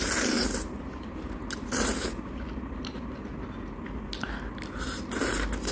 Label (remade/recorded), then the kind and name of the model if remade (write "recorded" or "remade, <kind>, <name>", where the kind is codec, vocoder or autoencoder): recorded